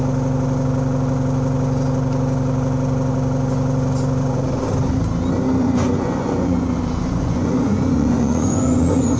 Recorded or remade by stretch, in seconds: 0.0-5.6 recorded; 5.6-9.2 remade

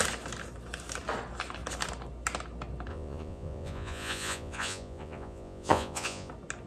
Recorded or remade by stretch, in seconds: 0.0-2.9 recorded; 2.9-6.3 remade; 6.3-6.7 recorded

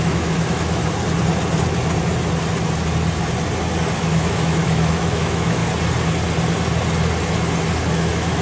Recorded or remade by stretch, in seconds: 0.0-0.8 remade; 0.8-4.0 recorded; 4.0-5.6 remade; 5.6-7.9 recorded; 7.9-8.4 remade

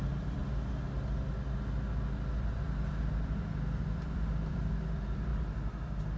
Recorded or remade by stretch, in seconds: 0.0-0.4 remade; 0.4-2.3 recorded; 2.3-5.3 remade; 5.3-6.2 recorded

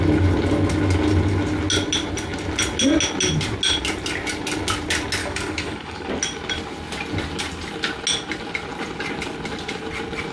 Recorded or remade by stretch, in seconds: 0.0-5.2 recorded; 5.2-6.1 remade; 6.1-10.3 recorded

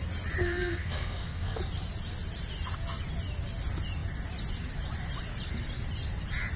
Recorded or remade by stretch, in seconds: 0.0-0.4 recorded; 0.4-1.6 remade; 1.6-6.6 recorded

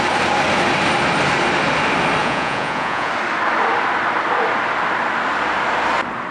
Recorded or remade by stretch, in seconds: 0.0-2.2 recorded; 2.2-3.1 remade; 3.1-6.3 recorded